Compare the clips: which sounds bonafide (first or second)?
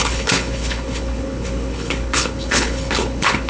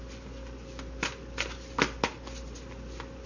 second